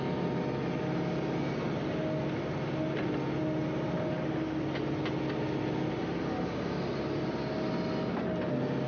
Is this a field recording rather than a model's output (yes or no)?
yes